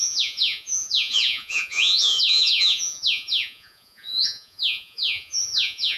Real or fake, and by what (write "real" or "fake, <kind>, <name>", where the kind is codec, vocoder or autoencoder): fake, vocoder, Vocos